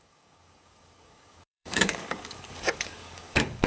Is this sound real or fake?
fake